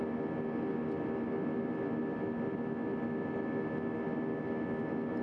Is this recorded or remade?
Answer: recorded